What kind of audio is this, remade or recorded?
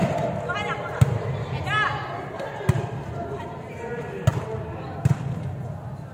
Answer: recorded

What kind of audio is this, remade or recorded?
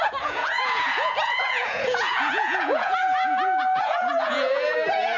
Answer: remade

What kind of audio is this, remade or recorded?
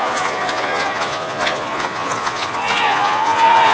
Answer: remade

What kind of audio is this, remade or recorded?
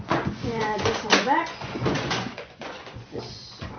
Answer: remade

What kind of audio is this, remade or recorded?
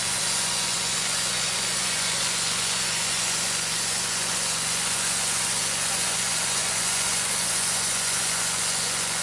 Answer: remade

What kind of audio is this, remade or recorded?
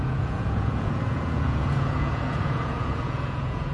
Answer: remade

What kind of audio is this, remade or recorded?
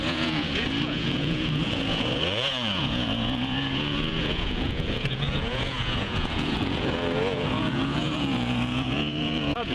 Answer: remade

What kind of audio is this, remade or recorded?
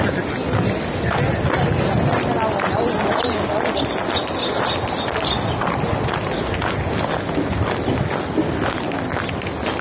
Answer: recorded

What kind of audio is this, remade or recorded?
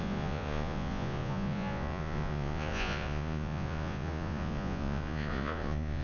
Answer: remade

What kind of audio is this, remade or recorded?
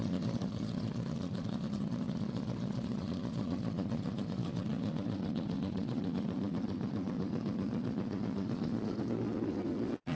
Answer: remade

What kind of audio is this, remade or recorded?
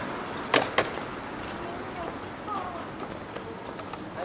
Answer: recorded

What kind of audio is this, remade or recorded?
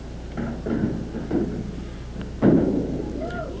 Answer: recorded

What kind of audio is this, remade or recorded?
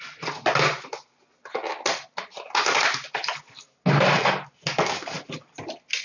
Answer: recorded